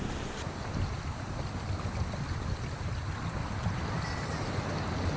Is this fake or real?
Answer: real